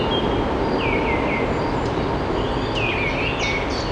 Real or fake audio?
real